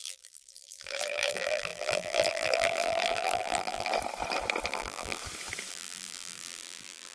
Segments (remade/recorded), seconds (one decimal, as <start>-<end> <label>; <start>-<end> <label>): 0.0-3.9 remade; 3.9-4.7 recorded; 4.7-5.2 remade; 5.2-5.7 recorded; 5.7-7.1 remade